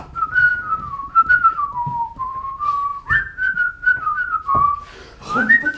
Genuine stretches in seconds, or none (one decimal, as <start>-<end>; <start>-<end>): 0.0-0.5; 2.3-2.9; 4.7-5.8